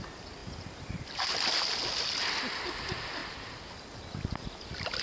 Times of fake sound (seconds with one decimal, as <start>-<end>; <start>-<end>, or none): none